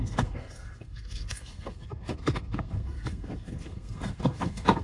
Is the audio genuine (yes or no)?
no